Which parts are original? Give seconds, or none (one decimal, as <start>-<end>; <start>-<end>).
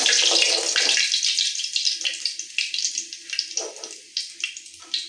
none